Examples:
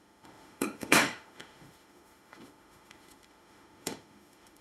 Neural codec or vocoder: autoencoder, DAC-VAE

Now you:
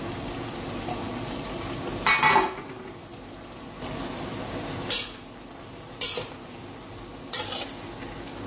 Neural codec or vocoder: none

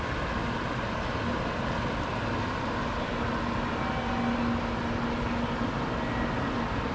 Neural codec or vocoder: none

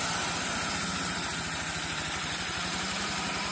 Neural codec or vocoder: none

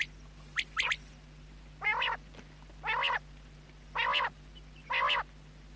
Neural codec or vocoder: none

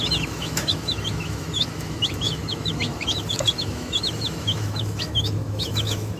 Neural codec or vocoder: autoencoder, DAC-VAE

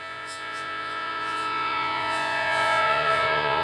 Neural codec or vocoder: vocoder, Vocos